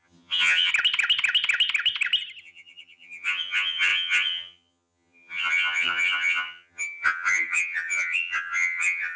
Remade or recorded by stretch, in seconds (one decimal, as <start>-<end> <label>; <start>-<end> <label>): 0.0-0.7 remade; 0.7-2.4 recorded; 2.4-9.2 remade